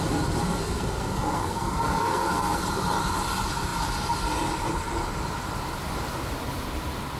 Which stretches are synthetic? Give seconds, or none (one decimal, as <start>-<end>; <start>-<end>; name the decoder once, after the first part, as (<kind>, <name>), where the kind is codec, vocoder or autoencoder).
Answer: 0.5-2.6 (codec, SNAC)